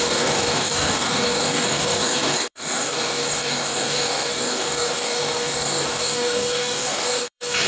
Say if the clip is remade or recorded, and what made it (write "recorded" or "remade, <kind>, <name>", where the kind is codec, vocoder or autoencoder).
remade, codec, DAC